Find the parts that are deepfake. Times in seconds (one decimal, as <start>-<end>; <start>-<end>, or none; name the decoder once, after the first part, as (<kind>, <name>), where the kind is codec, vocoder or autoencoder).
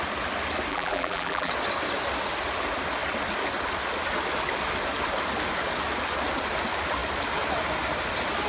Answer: 0.7-1.5 (vocoder, BigVGAN v2)